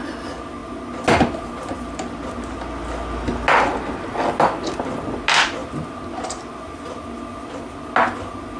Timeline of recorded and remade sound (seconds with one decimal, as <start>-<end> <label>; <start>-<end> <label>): 0.0-8.6 recorded